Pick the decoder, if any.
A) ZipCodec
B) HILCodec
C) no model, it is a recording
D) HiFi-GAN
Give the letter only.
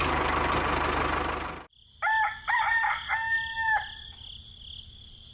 C